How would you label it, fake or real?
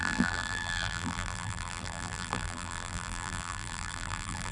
fake